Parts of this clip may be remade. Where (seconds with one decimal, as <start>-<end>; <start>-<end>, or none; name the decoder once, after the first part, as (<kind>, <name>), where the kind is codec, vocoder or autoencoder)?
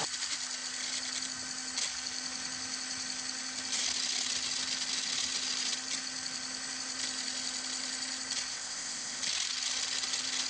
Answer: 8.5-9.2 (codec, ZipCodec)